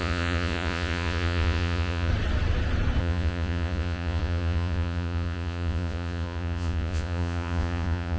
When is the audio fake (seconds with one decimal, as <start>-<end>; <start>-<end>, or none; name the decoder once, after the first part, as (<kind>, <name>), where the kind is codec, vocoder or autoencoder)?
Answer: 0.0-2.1 (vocoder, Vocos); 3.0-8.2